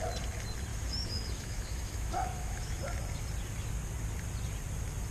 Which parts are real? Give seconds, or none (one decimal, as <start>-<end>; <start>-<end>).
0.0-0.7; 2.8-5.1